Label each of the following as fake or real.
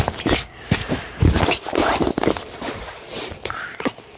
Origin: real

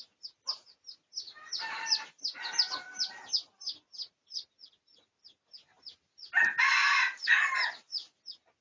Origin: real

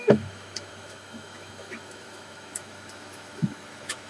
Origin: fake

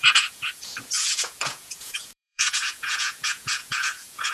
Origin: fake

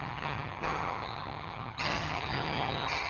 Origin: fake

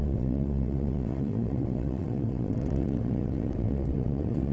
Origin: fake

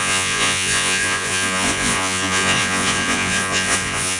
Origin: fake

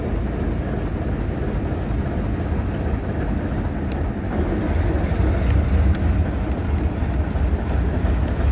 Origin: real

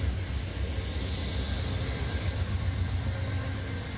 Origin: real